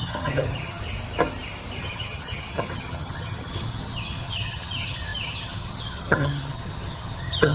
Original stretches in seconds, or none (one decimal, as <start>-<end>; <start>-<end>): 0.8-1.8